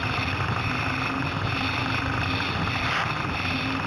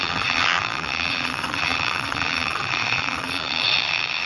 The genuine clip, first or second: first